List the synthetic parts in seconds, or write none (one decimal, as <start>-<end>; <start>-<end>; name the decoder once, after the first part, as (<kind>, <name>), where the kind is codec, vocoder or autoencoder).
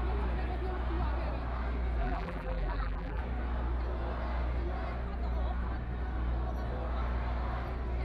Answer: 2.0-3.2 (vocoder, BigVGAN v2)